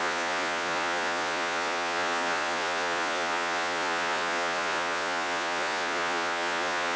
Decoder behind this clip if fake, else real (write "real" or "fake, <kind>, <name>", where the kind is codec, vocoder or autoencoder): fake, vocoder, Vocos